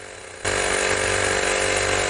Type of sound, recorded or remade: recorded